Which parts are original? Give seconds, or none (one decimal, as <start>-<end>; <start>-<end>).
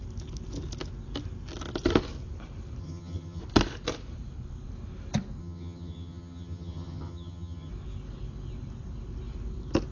0.0-2.8; 3.4-5.4; 7.7-9.9